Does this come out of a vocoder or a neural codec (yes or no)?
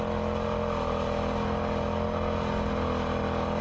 no